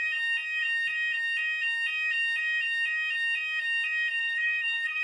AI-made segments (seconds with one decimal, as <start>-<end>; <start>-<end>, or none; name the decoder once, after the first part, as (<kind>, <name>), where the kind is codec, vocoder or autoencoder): 4.2-5.0 (codec, SNAC)